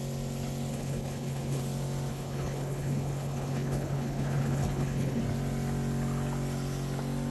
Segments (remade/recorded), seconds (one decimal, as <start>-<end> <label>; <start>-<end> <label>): 0.0-0.7 recorded; 0.7-1.6 remade; 1.6-2.1 recorded; 2.1-5.2 remade; 5.2-7.3 recorded